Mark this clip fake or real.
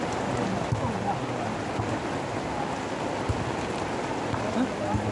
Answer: real